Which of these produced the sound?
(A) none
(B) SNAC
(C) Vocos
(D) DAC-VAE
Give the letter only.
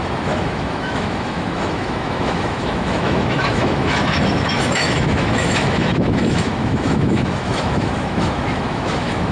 D